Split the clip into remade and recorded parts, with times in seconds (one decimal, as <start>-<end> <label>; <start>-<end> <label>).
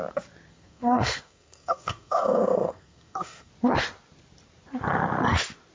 0.0-0.5 recorded; 0.5-3.5 remade; 3.5-5.7 recorded